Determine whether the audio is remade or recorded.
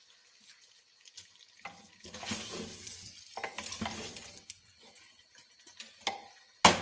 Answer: recorded